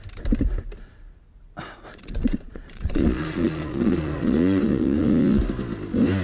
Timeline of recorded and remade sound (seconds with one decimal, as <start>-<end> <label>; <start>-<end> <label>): 0.0-1.9 recorded; 1.9-5.4 remade; 5.4-6.2 recorded